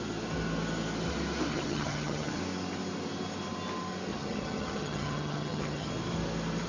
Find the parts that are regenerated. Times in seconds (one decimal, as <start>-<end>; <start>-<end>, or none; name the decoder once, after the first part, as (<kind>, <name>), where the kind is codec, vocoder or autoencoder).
1.5-2.4 (vocoder, HiFi-GAN); 4.1-5.9